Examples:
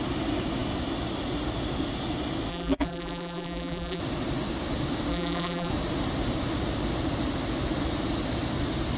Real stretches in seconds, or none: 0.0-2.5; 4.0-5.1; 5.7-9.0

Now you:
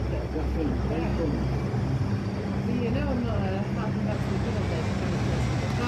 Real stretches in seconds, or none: 0.0-5.9

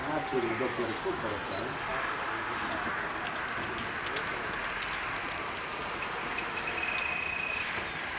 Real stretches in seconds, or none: 0.5-8.2

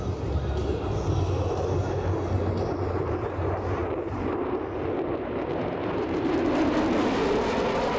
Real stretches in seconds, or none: 0.0-3.8; 4.4-5.8; 6.3-8.0

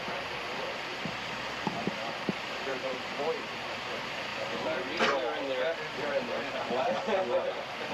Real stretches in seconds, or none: 0.0-2.7; 3.9-7.9

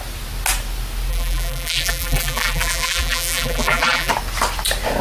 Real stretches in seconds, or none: 0.0-1.1; 4.1-5.0

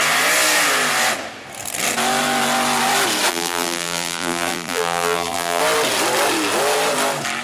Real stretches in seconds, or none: 0.0-3.3; 5.6-7.4